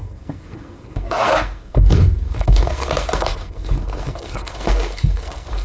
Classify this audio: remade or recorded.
remade